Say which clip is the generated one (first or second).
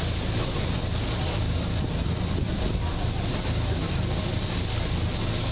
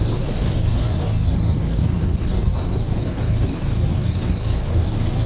second